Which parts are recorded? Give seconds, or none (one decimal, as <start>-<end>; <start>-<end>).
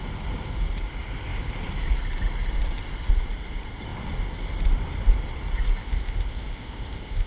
0.0-5.8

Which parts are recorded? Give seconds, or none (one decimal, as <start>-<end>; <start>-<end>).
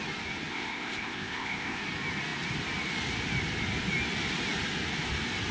0.0-0.5; 1.8-5.5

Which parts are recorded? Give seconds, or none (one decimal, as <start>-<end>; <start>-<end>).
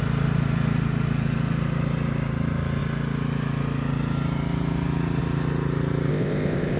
0.0-6.1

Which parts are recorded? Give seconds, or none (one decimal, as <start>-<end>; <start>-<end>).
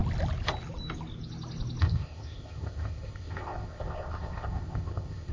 0.0-1.8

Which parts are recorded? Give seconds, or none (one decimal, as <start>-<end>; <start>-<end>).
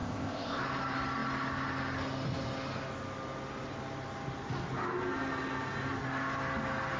0.6-7.0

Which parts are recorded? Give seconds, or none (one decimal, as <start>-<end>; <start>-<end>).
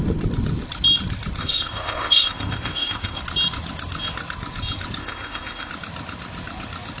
0.0-1.4; 3.2-5.0; 5.7-7.0